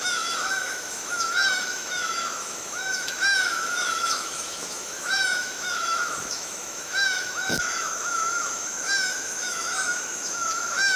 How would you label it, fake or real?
fake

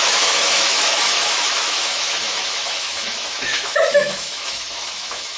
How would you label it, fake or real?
fake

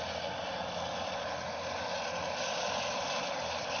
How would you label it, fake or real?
real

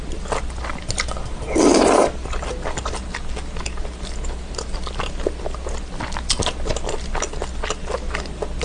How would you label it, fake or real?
real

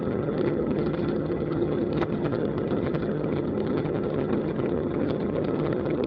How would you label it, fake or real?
fake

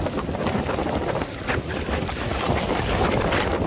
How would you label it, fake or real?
real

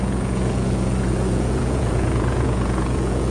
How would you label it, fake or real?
fake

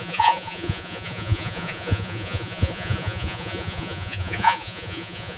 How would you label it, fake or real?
fake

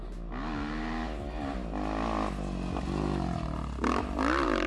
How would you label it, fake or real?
real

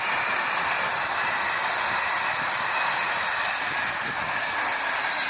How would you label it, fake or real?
real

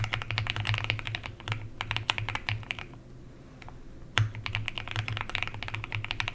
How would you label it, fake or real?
real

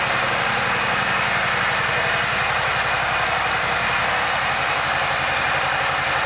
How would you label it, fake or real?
real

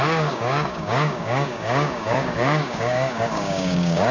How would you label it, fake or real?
fake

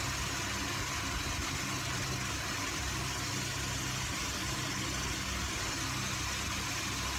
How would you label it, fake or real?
real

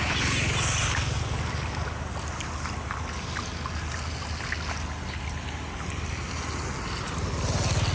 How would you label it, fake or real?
real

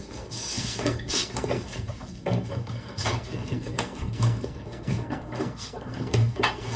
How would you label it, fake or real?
fake